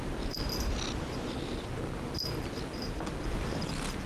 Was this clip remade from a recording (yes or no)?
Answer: no